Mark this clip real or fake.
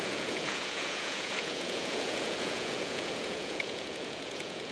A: fake